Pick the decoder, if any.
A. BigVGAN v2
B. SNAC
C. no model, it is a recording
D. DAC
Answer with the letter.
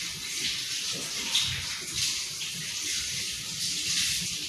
C